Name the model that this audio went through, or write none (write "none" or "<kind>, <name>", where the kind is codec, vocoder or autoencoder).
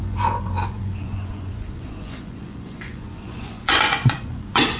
vocoder, Vocos